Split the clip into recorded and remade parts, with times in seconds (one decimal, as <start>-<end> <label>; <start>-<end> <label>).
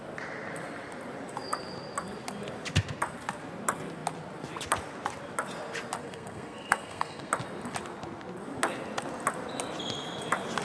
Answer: 0.0-6.0 recorded; 6.0-7.3 remade; 7.3-10.6 recorded